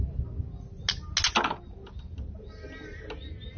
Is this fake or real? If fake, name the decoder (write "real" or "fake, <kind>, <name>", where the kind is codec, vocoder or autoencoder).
real